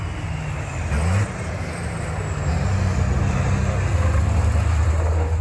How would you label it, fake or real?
real